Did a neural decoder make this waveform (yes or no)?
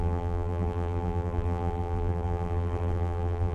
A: yes